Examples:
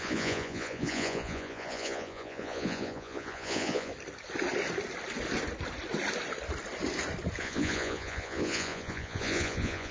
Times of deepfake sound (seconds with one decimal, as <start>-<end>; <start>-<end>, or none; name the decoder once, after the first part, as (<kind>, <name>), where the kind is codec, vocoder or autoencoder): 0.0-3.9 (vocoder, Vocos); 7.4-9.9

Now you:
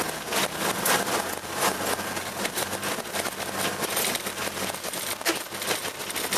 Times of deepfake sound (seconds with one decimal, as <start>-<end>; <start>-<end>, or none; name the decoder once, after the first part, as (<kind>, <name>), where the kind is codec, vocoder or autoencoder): none

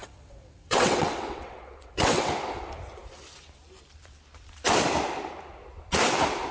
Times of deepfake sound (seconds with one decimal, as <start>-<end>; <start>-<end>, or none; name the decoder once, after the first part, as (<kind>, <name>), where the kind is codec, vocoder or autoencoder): 0.0-2.3 (vocoder, WaveNeXt)